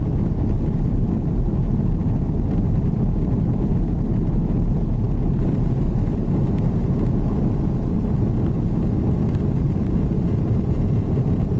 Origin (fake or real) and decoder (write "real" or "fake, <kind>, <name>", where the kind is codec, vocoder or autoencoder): real